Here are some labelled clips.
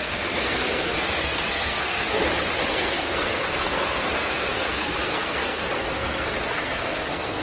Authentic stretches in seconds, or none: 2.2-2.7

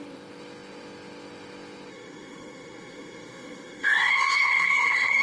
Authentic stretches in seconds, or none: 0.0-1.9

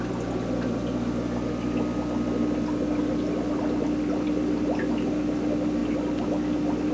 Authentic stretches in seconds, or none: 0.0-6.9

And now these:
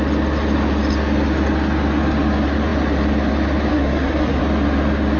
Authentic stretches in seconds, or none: 0.0-3.7; 4.4-5.2

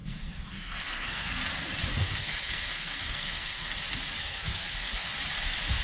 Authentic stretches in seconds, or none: 1.3-1.9; 3.7-4.2; 5.1-5.8